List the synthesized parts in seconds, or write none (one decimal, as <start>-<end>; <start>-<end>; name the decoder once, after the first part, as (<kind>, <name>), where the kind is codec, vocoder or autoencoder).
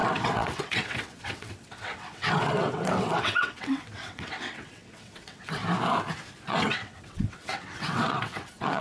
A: 0.0-5.6 (vocoder, WaveNeXt); 6.5-8.8